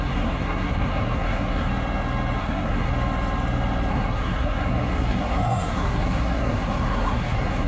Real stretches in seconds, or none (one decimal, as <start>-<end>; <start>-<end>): 1.7-2.4; 2.9-3.9